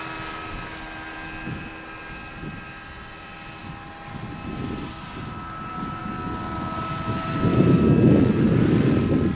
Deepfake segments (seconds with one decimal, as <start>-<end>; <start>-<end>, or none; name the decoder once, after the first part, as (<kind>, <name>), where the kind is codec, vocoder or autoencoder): 3.6-5.1 (vocoder, BigVGAN v2)